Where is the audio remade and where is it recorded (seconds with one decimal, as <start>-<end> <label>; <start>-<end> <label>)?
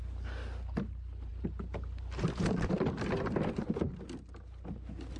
0.0-5.2 recorded